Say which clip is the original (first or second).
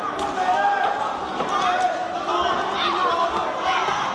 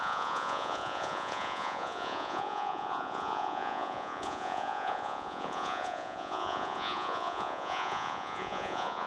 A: first